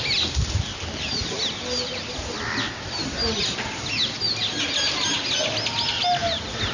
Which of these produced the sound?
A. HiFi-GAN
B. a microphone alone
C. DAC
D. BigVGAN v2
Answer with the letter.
B